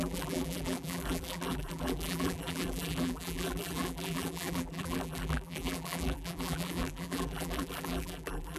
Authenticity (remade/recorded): remade